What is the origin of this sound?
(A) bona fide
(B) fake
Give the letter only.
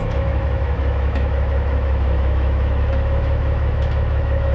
B